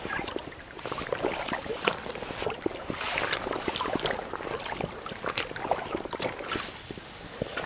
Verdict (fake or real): real